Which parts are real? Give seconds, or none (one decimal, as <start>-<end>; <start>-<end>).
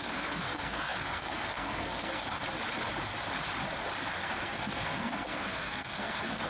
2.4-4.1